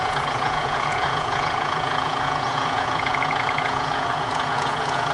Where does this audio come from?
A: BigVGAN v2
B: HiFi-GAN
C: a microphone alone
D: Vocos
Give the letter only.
D